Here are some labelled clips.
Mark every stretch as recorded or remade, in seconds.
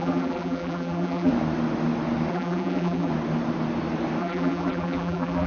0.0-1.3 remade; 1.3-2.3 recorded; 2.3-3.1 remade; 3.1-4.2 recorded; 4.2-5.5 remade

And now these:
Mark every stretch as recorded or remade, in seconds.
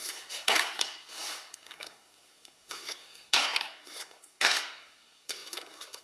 0.0-6.0 remade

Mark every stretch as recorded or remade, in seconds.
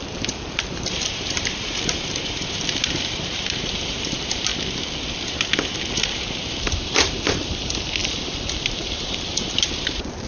0.0-4.5 remade; 4.5-5.9 recorded; 5.9-10.3 remade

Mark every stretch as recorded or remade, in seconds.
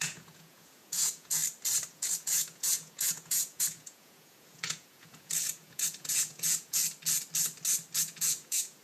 0.0-1.4 remade; 1.4-1.9 recorded; 1.9-6.8 remade; 6.8-8.0 recorded; 8.0-8.8 remade